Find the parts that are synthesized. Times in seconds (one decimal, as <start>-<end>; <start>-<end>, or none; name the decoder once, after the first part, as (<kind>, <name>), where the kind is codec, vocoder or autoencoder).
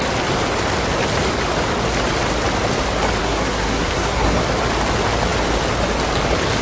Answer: 3.2-4.4 (codec, SNAC)